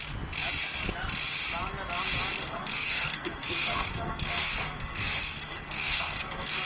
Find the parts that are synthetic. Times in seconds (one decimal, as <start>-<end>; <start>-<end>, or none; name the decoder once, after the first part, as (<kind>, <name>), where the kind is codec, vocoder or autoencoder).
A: 2.4-6.6 (codec, SNAC)